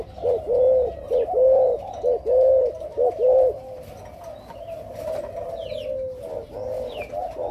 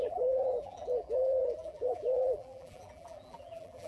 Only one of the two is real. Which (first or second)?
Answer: first